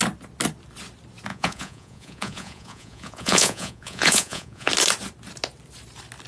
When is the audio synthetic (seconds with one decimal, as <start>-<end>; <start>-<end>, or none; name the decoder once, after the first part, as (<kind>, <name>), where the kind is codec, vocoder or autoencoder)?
1.3-4.7 (vocoder, Vocos)